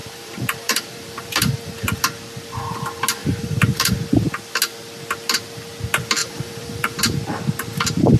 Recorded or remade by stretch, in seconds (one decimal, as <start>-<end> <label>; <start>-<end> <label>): 0.0-2.0 remade; 2.0-3.2 recorded; 3.2-3.9 remade; 3.9-6.2 recorded; 6.2-7.0 remade; 7.0-8.2 recorded